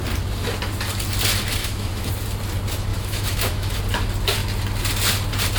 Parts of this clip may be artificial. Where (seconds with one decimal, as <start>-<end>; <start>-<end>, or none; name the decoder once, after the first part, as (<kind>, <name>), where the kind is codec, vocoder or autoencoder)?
1.6-2.1 (autoencoder, DAC-VAE); 2.9-3.8